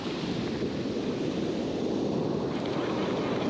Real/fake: real